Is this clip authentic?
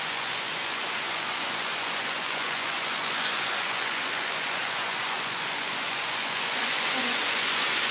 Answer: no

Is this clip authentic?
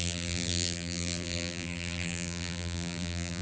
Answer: no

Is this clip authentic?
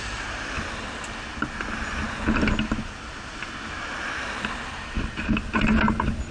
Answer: yes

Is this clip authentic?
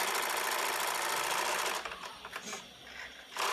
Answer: yes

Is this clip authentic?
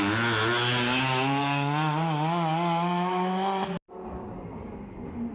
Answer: yes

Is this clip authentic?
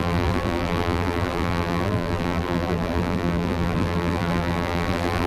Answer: no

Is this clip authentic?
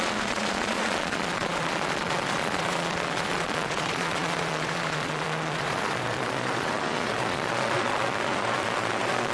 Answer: no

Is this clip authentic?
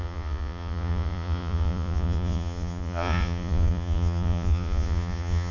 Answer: no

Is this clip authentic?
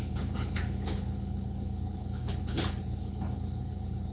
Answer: no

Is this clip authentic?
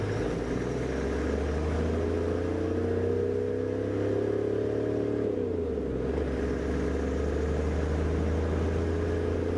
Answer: yes